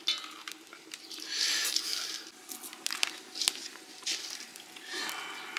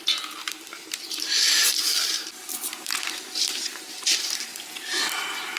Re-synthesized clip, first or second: second